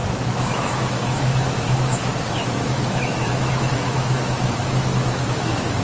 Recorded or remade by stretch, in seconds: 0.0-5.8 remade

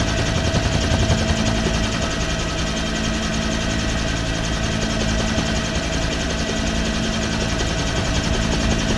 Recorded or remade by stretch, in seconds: 0.0-9.0 recorded

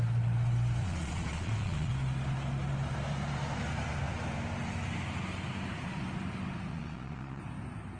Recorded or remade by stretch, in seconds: 0.0-0.8 recorded; 0.8-1.9 remade; 1.9-6.7 recorded; 6.7-7.4 remade; 7.4-8.0 recorded

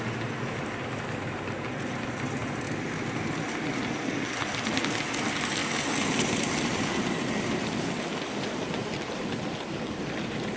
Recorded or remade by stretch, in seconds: 0.0-10.6 recorded

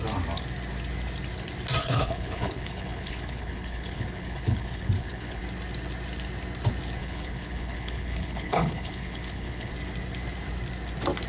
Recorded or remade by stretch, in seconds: 0.0-1.8 recorded; 1.8-5.4 remade; 5.4-7.0 recorded; 7.0-9.7 remade; 9.7-11.3 recorded

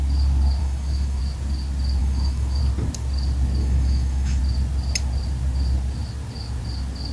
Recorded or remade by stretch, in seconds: 0.0-0.6 recorded; 0.6-1.2 remade; 1.2-2.0 recorded; 2.0-2.6 remade; 2.6-3.6 recorded; 3.6-4.4 remade; 4.4-7.1 recorded